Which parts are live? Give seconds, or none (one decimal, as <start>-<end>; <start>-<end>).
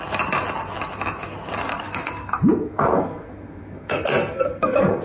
0.0-1.7